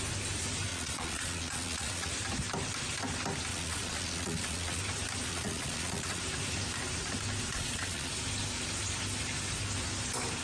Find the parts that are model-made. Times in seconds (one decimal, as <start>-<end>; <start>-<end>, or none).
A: 0.7-2.1; 3.5-4.8; 5.3-6.2; 7.5-8.1